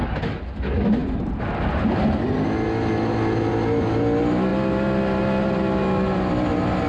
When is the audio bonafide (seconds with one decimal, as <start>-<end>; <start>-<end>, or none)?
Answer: 0.0-6.9